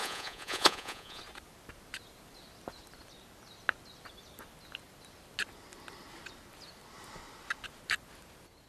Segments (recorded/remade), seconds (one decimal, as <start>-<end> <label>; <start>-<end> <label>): 0.0-1.2 remade; 1.2-8.7 recorded

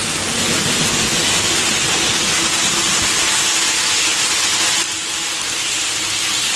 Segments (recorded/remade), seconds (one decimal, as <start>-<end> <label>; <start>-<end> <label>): 0.0-6.6 recorded

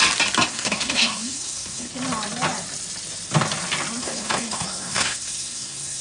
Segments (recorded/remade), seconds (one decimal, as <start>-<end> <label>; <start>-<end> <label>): 0.0-0.5 recorded; 0.5-1.9 remade; 1.9-4.0 recorded; 4.0-6.0 remade

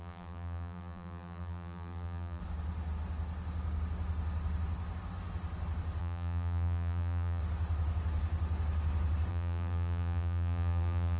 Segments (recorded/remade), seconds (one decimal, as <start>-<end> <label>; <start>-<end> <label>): 0.0-2.4 remade; 2.4-6.0 recorded; 6.0-7.4 remade; 7.4-9.3 recorded; 9.3-11.2 remade

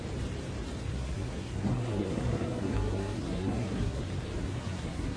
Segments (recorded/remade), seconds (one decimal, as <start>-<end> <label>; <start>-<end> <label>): 0.0-0.9 recorded; 0.9-4.0 remade; 4.0-4.4 recorded; 4.4-5.2 remade

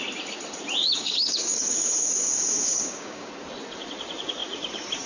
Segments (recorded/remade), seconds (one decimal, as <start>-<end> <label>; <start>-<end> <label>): 0.0-0.8 recorded; 0.8-3.3 remade; 3.3-5.1 recorded

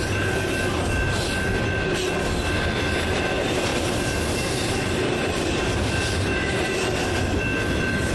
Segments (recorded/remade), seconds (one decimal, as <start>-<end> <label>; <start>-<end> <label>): 0.0-3.7 recorded; 3.7-6.6 remade; 6.6-7.5 recorded; 7.5-8.1 remade

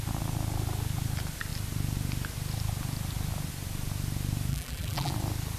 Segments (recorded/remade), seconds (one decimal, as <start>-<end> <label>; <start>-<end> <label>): 0.0-4.5 recorded; 4.5-5.1 remade; 5.1-5.6 recorded